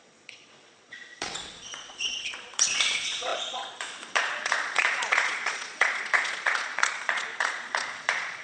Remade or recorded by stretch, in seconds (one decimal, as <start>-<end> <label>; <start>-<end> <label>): 0.0-8.4 remade